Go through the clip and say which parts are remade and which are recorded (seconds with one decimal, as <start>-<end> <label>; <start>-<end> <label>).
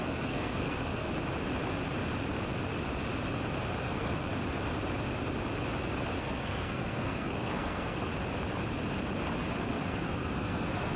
0.0-1.1 remade; 1.1-3.8 recorded; 3.8-4.3 remade; 4.3-6.2 recorded; 6.2-8.1 remade; 8.1-9.6 recorded; 9.6-11.0 remade